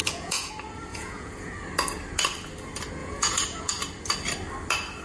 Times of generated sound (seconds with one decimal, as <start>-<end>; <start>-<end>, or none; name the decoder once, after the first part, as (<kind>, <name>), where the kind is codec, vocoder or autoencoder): 0.0-0.5 (vocoder, Vocos); 0.9-1.5; 3.0-3.7

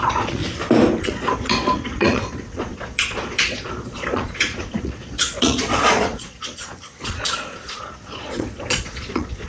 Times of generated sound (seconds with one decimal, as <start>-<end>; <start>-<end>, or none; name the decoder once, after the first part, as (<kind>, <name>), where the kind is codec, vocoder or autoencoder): 0.0-0.4 (vocoder, Vocos); 1.0-9.5